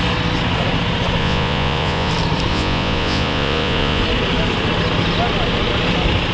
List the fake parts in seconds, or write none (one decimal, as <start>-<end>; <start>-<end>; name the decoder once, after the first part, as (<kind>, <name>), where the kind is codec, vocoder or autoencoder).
1.2-2.1 (vocoder, Vocos); 2.5-4.0